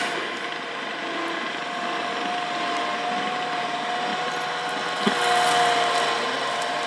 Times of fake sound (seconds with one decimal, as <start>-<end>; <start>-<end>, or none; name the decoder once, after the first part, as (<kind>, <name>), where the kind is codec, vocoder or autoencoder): none